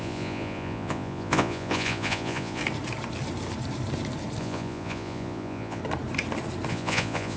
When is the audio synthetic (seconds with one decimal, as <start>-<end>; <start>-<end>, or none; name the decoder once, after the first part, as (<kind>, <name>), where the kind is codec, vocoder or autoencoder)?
0.0-2.6 (vocoder, Vocos); 4.4-5.8; 6.7-7.4